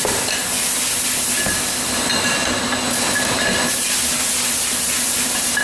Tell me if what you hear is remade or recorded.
recorded